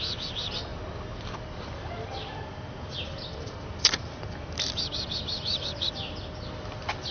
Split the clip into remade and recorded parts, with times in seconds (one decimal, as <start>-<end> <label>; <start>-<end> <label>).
0.0-7.1 recorded